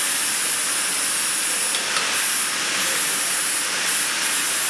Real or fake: real